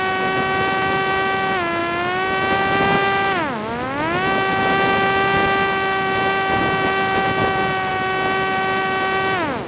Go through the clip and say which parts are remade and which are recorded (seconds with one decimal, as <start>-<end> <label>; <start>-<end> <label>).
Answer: 0.0-9.7 recorded